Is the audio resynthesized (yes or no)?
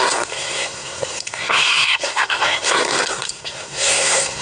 yes